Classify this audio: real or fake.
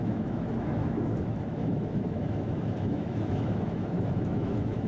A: fake